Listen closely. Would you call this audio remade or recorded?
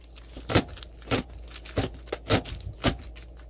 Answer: recorded